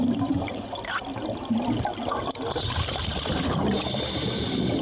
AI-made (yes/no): no